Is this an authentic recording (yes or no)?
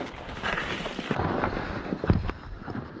yes